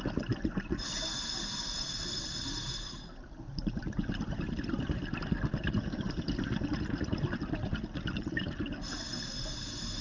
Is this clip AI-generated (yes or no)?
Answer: no